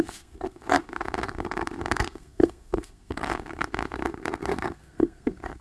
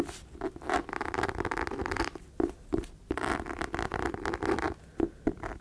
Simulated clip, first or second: first